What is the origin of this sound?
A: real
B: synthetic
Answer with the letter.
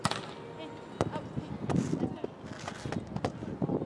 A